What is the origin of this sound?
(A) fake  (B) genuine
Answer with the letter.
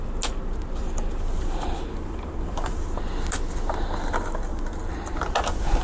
B